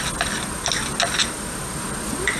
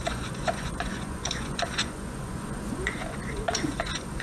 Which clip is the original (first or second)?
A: first